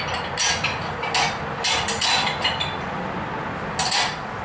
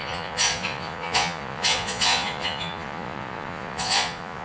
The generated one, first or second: second